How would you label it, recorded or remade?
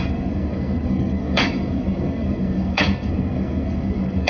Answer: remade